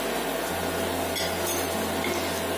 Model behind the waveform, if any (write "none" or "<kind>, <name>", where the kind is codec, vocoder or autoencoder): none